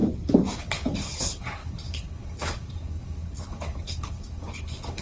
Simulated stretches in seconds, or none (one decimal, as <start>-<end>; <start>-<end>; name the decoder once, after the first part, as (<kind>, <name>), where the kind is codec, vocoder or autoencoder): 0.6-5.0 (codec, HILCodec)